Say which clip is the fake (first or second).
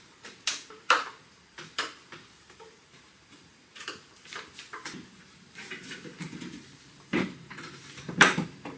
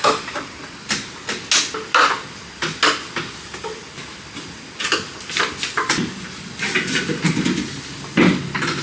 first